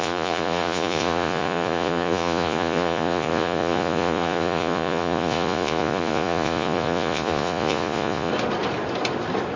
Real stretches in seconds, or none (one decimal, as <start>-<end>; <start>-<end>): 8.3-9.6